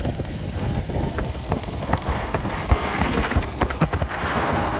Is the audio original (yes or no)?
no